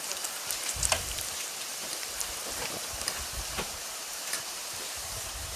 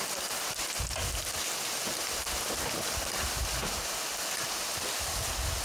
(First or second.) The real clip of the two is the second